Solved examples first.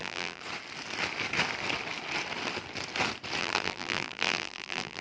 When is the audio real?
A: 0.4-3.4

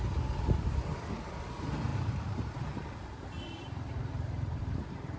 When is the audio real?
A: 0.0-1.9

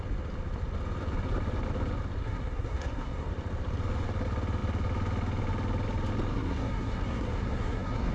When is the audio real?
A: 0.0-2.2; 3.3-6.3

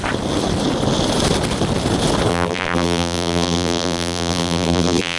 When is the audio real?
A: 0.0-2.3

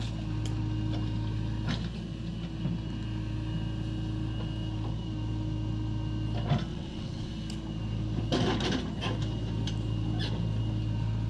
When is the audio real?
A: 0.0-6.7; 7.3-11.3